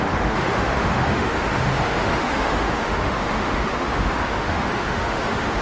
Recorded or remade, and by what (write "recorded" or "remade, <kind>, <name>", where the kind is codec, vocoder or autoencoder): remade, autoencoder, DAC-VAE